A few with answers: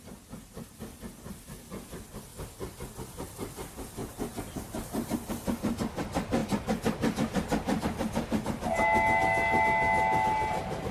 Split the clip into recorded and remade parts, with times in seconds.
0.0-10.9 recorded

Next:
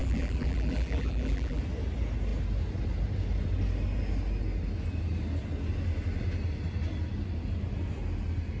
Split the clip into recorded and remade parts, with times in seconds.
0.0-1.6 remade; 1.6-8.6 recorded

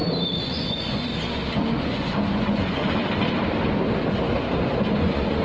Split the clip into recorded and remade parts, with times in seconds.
0.0-0.5 recorded; 0.5-1.1 remade; 1.1-1.7 recorded; 1.7-2.8 remade; 2.8-4.9 recorded; 4.9-5.4 remade

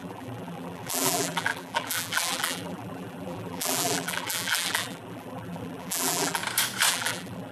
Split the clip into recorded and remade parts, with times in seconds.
0.0-6.4 remade; 6.4-6.9 recorded; 6.9-7.5 remade

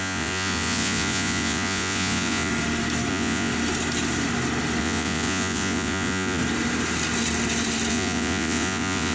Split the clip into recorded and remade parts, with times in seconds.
0.0-2.5 remade; 2.5-3.1 recorded; 3.1-3.5 remade; 3.5-4.8 recorded; 4.8-6.4 remade; 6.4-7.9 recorded; 7.9-9.1 remade

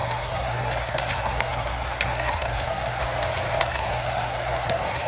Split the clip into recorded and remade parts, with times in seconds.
0.0-3.0 remade; 3.0-3.6 recorded; 3.6-5.1 remade

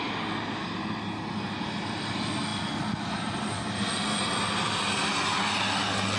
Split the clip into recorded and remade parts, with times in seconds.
0.0-6.2 recorded

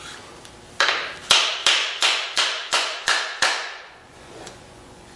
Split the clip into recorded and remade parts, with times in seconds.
0.0-1.8 recorded; 1.8-5.2 remade